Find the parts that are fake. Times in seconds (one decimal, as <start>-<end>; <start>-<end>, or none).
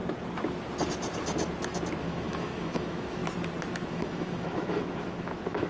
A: 2.0-3.2; 3.9-5.7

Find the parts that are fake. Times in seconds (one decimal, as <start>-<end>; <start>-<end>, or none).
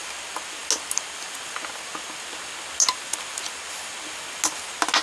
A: none